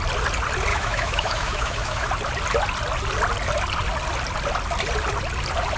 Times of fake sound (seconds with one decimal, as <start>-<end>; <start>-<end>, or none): 0.7-2.1